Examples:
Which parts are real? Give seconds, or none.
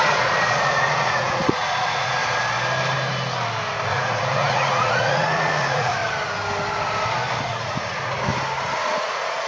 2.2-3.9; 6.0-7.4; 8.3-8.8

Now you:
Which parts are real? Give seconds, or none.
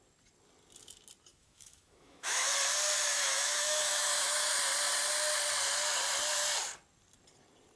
0.0-1.3; 2.5-3.1; 4.5-7.8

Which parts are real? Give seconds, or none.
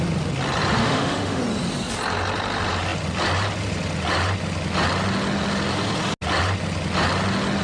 0.0-0.8; 1.4-7.6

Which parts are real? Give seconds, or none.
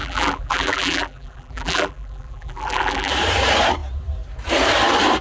3.1-5.2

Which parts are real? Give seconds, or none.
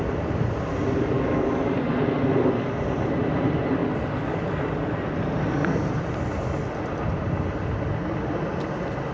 0.0-9.1